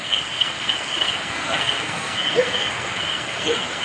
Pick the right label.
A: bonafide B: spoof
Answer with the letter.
B